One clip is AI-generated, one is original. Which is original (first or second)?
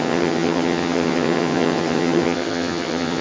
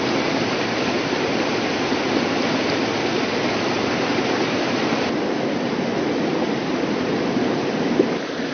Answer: second